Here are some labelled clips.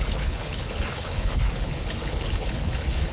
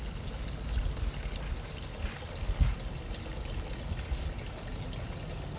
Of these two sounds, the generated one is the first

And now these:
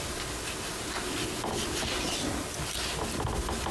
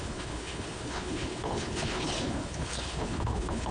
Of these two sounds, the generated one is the second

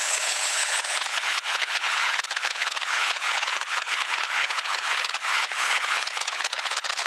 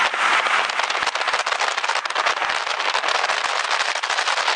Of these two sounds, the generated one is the first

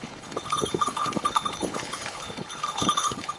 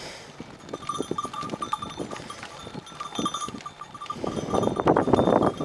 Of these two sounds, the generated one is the first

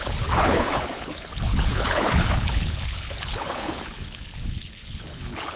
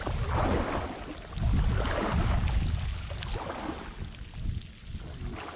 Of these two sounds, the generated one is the first